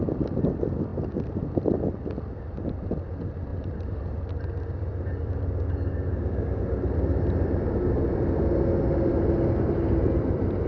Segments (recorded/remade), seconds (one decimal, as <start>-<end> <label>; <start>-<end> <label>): 0.0-6.1 recorded; 6.1-6.6 remade; 6.6-10.7 recorded